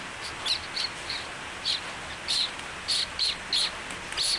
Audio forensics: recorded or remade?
recorded